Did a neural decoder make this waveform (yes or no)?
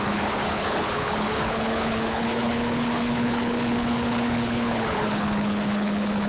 yes